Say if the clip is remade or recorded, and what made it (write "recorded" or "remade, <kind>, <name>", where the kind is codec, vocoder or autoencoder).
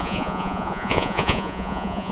remade, vocoder, Vocos